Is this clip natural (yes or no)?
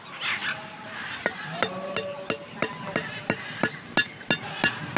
yes